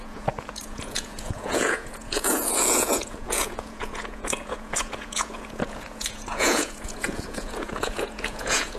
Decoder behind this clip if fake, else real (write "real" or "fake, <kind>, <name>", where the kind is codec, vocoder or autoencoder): fake, vocoder, Vocos